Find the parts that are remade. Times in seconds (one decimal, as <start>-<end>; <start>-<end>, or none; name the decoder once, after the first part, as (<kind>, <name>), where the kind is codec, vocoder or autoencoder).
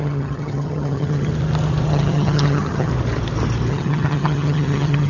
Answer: 0.0-1.3 (vocoder, HiFi-GAN); 1.9-2.9; 3.7-5.1